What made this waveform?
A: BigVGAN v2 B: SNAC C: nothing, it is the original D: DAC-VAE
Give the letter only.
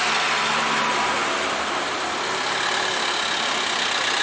C